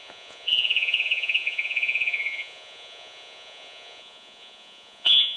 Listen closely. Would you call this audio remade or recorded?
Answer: remade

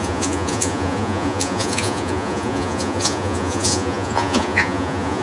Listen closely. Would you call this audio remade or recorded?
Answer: remade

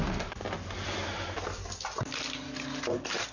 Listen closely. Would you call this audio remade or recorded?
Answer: recorded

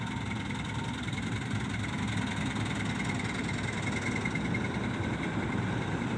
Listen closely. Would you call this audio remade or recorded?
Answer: recorded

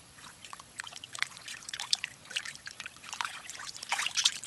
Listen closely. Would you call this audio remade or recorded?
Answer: remade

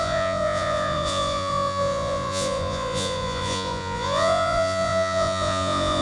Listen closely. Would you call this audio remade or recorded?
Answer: remade